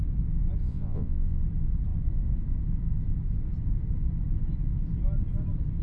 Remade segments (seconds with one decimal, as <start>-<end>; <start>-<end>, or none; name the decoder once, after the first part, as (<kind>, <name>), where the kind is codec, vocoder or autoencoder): 0.6-1.4 (vocoder, Vocos)

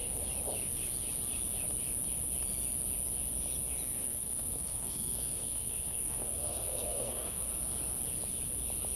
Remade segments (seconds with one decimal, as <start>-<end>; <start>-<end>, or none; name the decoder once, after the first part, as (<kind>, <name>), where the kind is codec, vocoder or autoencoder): 4.0-7.5 (codec, SNAC)

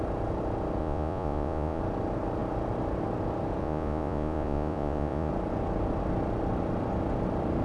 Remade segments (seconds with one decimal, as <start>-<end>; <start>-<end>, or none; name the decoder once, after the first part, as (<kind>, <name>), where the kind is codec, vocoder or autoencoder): 0.8-1.8 (vocoder, Vocos); 3.6-5.3

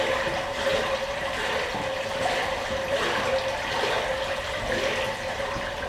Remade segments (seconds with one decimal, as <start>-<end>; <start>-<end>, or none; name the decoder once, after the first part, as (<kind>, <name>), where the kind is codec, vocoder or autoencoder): none